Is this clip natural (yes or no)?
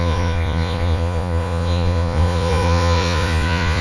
no